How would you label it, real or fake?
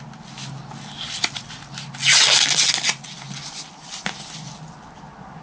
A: real